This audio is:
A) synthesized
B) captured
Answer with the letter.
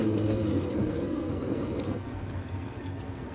A